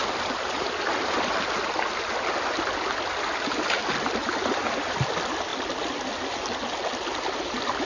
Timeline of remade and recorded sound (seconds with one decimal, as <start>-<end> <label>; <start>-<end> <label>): 0.0-7.8 recorded